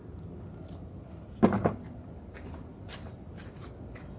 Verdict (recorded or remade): recorded